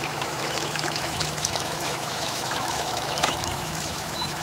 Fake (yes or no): yes